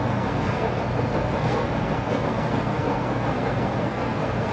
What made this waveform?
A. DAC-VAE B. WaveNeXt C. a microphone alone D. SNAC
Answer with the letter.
D